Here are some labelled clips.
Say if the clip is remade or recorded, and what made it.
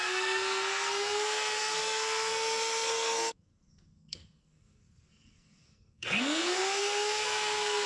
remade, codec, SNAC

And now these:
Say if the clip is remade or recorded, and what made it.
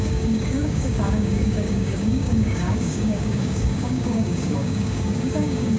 remade, codec, DAC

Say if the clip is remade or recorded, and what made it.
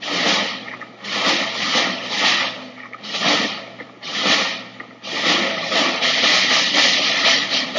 recorded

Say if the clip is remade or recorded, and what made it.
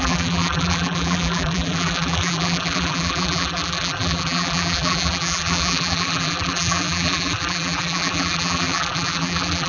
remade, vocoder, BigVGAN v2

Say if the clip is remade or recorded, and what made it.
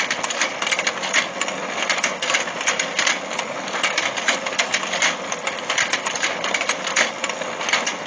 recorded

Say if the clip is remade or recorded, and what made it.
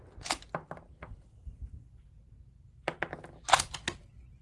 recorded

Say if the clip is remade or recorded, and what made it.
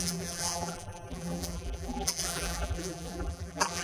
remade, vocoder, BigVGAN v2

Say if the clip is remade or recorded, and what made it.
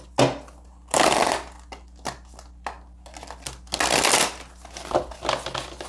recorded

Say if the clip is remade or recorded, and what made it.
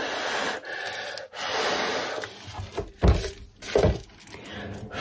recorded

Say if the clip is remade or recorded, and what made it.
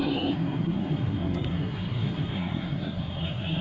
remade, codec, SNAC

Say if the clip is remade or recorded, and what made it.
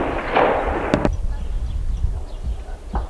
recorded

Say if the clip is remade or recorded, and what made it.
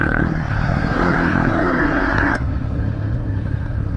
remade, codec, SNAC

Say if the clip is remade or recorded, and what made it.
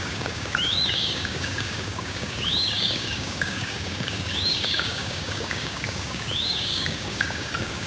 remade, codec, DAC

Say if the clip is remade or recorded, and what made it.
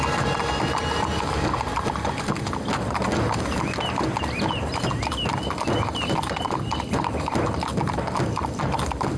recorded